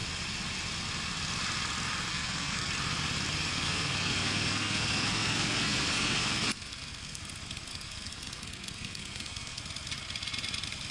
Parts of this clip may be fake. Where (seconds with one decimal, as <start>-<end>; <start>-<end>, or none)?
2.1-2.7; 3.5-7.2; 7.7-9.6